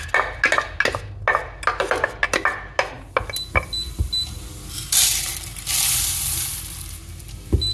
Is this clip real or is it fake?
real